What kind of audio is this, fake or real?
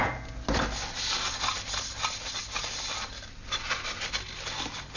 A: real